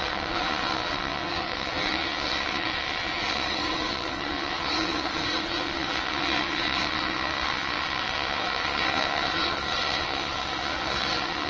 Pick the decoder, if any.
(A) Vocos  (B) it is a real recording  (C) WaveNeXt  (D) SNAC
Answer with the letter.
C